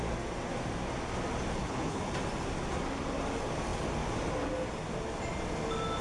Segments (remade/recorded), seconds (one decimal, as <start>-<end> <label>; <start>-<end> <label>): 0.0-1.6 recorded; 1.6-2.1 remade; 2.1-6.0 recorded